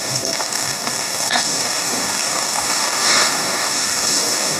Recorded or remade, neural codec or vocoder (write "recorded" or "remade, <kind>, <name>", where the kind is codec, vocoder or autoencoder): remade, codec, DAC